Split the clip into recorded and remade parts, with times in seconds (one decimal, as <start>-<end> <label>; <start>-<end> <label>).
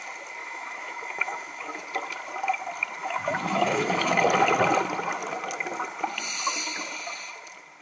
0.0-0.4 recorded; 0.4-1.8 remade; 1.8-3.0 recorded; 3.0-4.2 remade; 4.2-7.8 recorded